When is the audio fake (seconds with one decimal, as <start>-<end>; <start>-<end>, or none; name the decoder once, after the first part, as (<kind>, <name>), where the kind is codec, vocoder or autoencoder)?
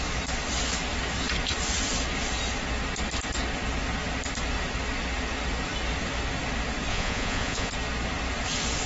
6.9-7.7 (vocoder, Vocos)